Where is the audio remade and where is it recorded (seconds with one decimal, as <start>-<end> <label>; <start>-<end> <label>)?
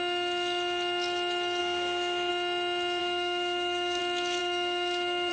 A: 0.0-1.6 recorded; 1.6-2.3 remade; 2.3-3.0 recorded; 3.0-4.0 remade; 4.0-4.4 recorded; 4.4-5.3 remade